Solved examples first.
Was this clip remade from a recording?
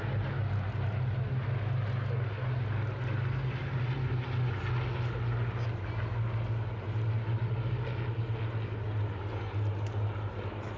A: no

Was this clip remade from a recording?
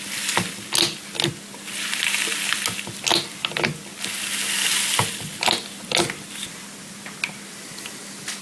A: no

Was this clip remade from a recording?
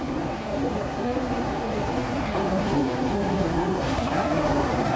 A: yes